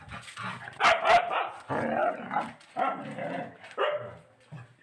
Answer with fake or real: real